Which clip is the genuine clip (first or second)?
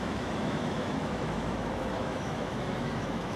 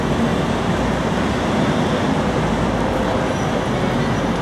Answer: second